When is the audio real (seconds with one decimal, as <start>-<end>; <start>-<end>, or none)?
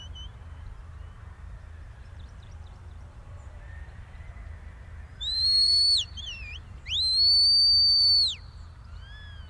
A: 0.0-2.0; 4.3-5.1; 6.8-9.5